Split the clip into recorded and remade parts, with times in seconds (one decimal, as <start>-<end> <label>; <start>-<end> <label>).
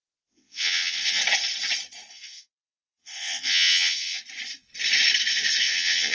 0.0-1.2 remade; 1.2-2.1 recorded; 2.1-4.2 remade; 4.2-5.6 recorded; 5.6-6.1 remade